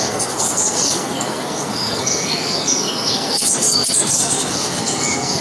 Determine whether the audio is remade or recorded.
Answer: remade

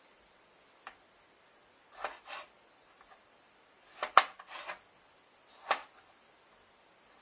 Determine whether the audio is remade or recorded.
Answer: recorded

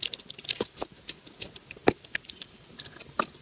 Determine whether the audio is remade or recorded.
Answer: recorded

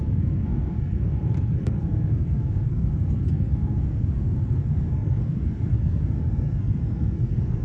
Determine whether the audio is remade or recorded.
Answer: remade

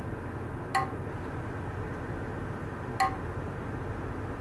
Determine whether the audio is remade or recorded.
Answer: recorded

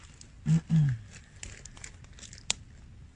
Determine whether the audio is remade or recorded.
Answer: recorded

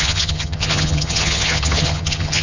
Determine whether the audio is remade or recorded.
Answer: remade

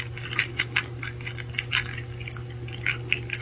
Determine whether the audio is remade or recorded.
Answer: recorded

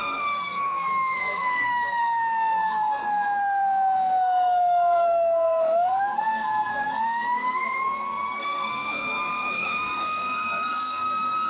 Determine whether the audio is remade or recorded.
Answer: remade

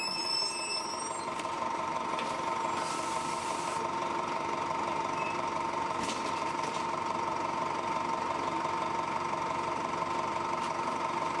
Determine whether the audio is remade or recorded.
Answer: remade